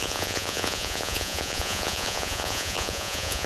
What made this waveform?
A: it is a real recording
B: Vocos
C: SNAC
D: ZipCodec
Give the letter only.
B